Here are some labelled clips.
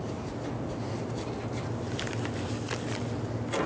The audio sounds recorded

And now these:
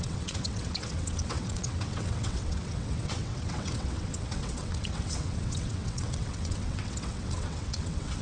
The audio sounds remade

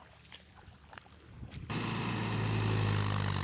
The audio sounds recorded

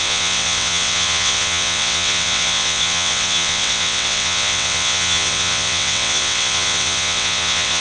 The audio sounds remade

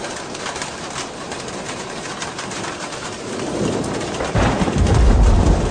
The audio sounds recorded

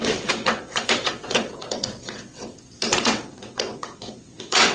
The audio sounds remade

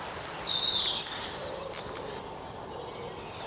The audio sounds recorded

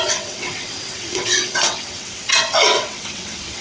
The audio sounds remade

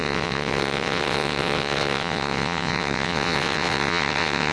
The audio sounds remade